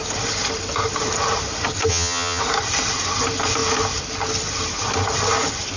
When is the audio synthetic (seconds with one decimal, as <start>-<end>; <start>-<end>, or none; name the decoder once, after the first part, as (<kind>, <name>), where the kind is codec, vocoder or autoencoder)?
1.9-2.4 (vocoder, HiFi-GAN)